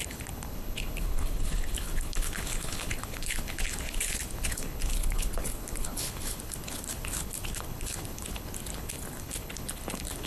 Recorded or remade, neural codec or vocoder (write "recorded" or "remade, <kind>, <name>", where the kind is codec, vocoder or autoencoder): remade, codec, HILCodec